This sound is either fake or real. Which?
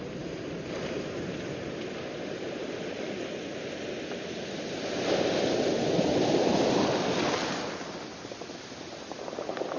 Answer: real